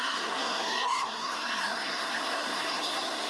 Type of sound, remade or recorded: remade